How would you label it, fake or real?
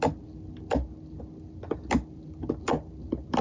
real